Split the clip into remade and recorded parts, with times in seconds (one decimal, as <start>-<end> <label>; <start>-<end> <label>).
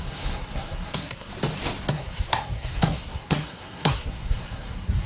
0.0-1.3 remade; 1.3-1.9 recorded; 1.9-5.1 remade